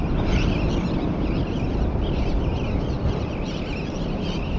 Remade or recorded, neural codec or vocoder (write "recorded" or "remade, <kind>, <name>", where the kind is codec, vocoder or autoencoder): recorded